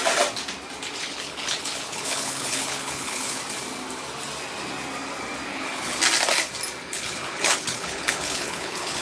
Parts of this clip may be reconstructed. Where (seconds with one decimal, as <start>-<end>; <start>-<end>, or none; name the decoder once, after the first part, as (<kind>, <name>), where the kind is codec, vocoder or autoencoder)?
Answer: 1.0-3.4 (codec, HILCodec); 5.5-6.0; 6.8-9.0